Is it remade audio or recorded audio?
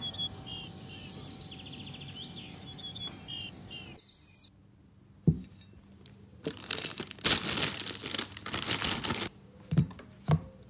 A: recorded